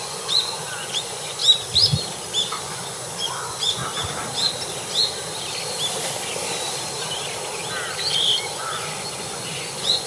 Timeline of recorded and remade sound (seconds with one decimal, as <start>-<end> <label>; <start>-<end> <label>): 0.0-1.4 remade; 1.4-2.6 recorded; 2.6-3.8 remade; 3.8-8.5 recorded; 8.5-10.1 remade